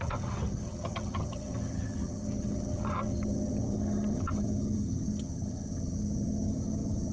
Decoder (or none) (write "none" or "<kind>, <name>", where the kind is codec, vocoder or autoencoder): vocoder, HiFi-GAN